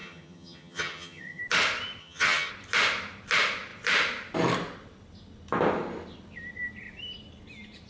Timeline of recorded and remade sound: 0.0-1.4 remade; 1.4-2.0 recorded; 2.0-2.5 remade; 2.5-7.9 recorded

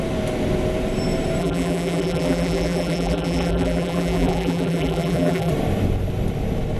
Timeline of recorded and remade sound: 0.0-1.4 recorded; 1.4-5.5 remade; 5.5-6.8 recorded

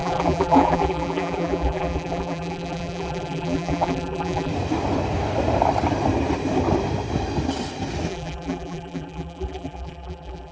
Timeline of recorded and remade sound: 0.0-4.5 remade; 4.5-8.1 recorded; 8.1-10.5 remade

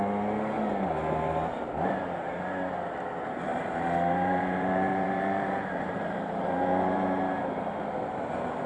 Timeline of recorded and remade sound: 0.0-3.5 recorded; 3.5-7.2 remade; 7.2-8.7 recorded

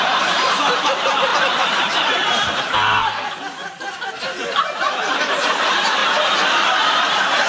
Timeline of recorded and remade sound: 0.0-1.3 remade; 1.3-1.8 recorded; 1.8-3.0 remade; 3.0-3.9 recorded; 3.9-6.0 remade; 6.0-6.9 recorded; 6.9-7.5 remade

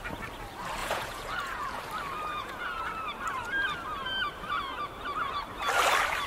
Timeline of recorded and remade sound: 0.0-0.8 recorded; 0.8-1.8 remade; 1.8-2.3 recorded; 2.3-2.8 remade; 2.8-6.3 recorded